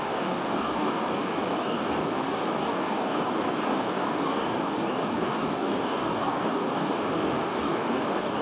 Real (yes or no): no